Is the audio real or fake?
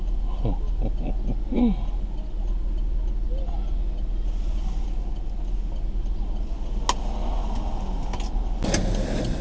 real